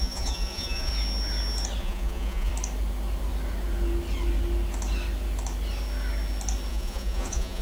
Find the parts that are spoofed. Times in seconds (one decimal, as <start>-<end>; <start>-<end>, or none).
0.0-0.9; 1.8-2.5; 6.7-7.6